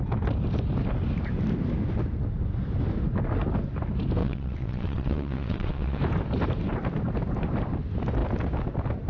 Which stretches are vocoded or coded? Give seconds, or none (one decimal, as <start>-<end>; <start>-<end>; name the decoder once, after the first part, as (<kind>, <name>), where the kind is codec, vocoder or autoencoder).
4.2-6.0 (vocoder, WaveNeXt)